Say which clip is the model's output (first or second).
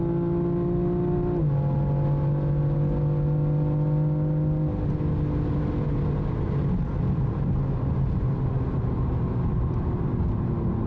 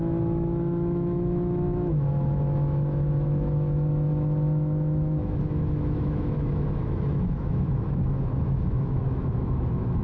second